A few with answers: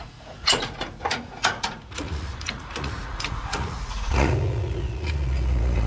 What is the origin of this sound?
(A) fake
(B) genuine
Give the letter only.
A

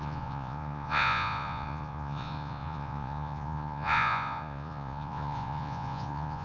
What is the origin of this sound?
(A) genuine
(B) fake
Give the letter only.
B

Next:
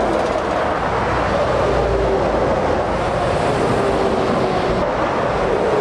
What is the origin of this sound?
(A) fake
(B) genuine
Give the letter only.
B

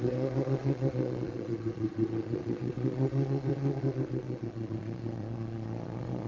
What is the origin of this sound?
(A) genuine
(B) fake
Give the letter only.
B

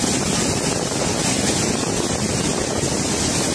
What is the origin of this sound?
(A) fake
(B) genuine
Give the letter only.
B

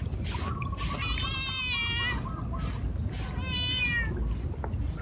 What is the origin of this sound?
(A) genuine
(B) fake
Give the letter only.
A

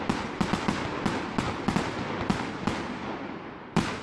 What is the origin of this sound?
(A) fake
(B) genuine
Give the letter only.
B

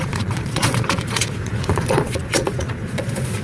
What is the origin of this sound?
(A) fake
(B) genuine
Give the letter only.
A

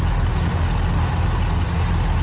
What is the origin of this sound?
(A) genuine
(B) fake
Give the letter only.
A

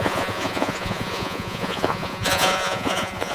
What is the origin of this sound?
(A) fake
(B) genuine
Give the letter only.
A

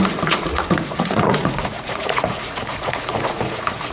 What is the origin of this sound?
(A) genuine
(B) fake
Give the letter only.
B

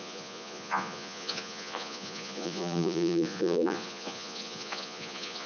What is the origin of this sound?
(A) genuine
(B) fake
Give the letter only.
B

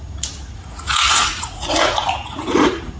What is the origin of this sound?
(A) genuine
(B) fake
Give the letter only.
B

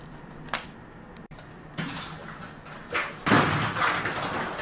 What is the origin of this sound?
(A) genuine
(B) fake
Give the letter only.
A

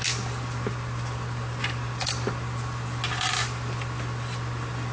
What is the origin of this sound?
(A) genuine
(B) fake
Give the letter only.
A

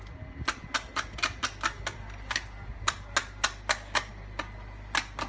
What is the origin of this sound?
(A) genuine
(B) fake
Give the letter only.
A